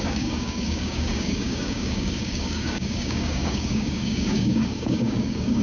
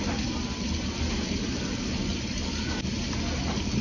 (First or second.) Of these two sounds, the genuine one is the second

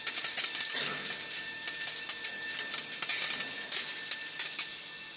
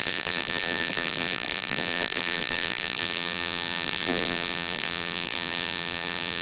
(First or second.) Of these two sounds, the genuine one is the first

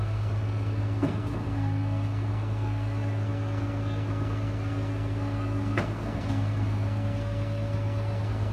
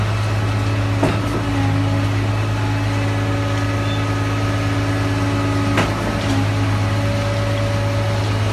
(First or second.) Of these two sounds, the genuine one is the second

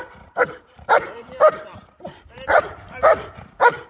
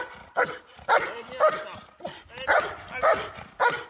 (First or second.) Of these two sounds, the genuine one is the second